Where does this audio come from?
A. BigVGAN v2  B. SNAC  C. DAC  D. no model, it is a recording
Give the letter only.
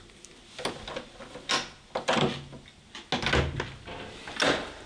D